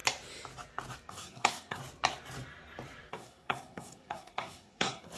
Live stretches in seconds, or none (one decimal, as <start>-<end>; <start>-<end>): 0.0-1.1; 1.8-3.1